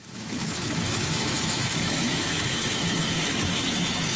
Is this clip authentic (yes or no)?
no